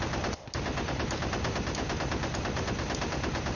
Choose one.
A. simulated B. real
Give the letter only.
B